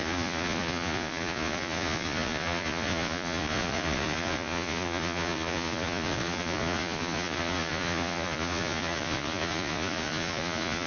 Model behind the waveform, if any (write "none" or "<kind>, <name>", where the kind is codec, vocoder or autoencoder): vocoder, Vocos